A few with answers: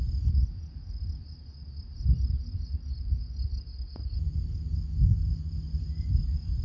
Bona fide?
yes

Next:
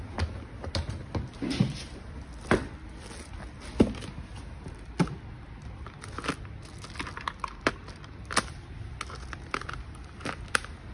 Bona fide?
yes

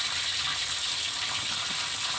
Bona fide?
yes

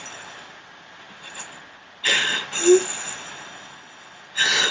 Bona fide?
yes